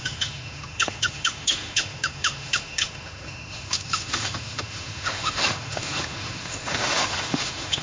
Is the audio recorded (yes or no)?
no